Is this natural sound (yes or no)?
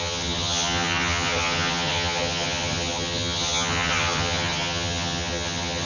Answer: no